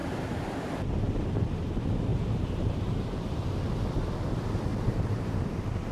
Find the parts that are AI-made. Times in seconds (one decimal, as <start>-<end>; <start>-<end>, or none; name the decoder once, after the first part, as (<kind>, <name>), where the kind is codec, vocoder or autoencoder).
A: 0.0-1.4 (vocoder, BigVGAN v2); 2.1-3.6; 4.7-5.3